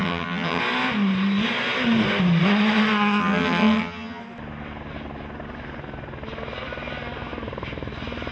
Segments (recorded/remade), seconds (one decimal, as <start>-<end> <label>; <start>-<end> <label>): 0.0-0.6 remade; 0.6-3.2 recorded; 3.2-4.2 remade; 4.2-8.3 recorded